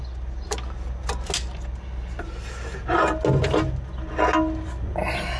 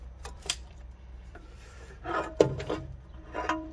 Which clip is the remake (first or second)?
second